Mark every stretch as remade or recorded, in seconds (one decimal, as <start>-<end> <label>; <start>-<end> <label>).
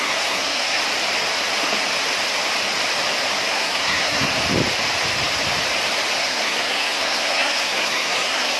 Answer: 0.0-0.8 remade; 0.8-3.5 recorded; 3.5-4.3 remade; 4.3-6.2 recorded; 6.2-8.6 remade